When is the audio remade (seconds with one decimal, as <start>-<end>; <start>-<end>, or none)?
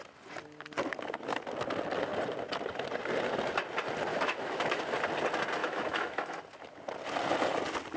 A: 4.1-4.8; 5.6-6.4